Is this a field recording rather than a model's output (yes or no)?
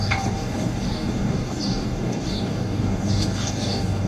no